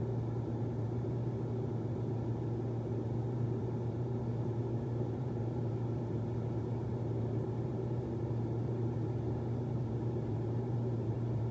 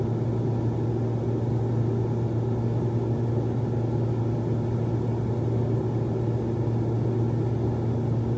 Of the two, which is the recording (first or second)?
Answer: second